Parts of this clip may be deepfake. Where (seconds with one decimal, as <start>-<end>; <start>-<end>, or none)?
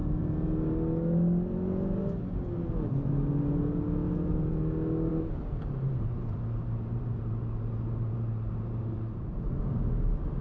5.1-9.6